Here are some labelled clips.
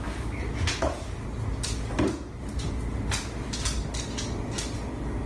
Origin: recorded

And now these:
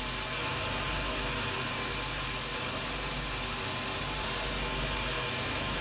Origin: recorded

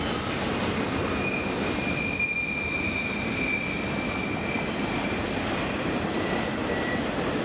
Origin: recorded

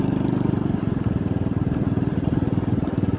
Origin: recorded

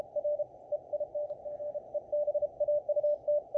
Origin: recorded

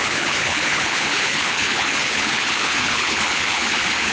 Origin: remade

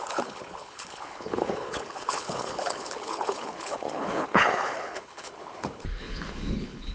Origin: remade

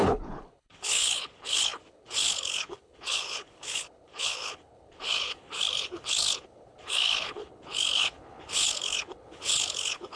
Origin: remade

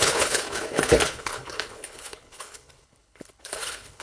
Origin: remade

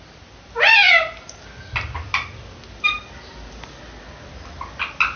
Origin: recorded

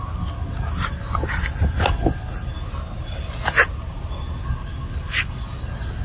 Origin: recorded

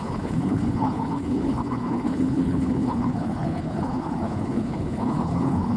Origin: remade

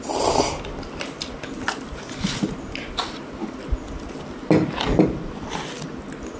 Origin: recorded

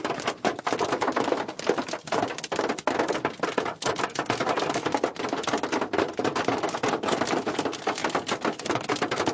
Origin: recorded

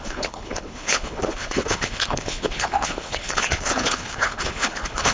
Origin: remade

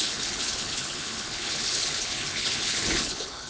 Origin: remade